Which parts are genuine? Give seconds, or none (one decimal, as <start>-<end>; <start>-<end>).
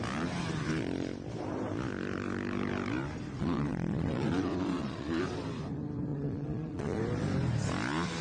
0.0-3.4; 5.2-6.1; 7.0-8.2